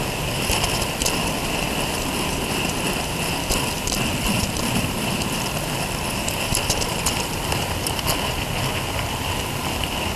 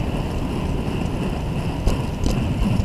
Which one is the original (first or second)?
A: second